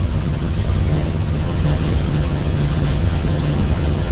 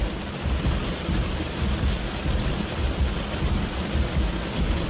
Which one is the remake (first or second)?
first